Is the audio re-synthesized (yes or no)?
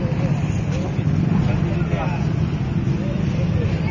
no